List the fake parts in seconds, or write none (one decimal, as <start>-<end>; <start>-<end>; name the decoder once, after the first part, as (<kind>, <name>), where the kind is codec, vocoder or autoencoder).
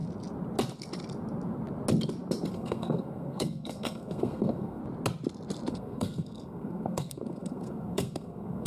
2.5-4.8 (codec, SNAC); 5.7-8.7